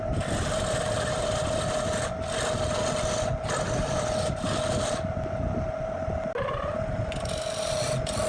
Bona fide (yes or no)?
yes